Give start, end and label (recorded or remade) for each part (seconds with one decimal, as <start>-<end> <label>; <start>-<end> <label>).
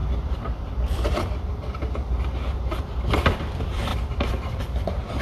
0.0-3.9 remade; 3.9-4.6 recorded; 4.6-5.2 remade